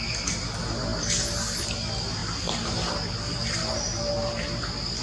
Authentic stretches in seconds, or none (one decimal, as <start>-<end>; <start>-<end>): 0.0-5.0